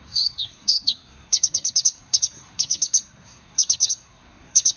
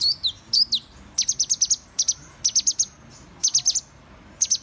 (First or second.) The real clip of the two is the second